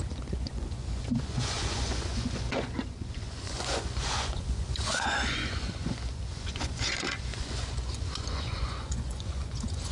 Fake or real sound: fake